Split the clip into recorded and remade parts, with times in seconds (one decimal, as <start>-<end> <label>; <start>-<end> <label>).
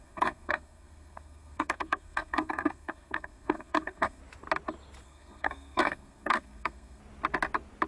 0.0-4.2 remade; 4.2-5.0 recorded; 5.0-7.0 remade; 7.0-7.9 recorded